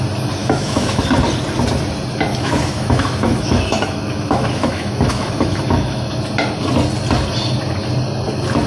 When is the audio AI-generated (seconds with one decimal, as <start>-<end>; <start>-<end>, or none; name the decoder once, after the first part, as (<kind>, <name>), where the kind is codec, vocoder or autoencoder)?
0.4-1.0 (autoencoder, DAC-VAE); 2.3-6.2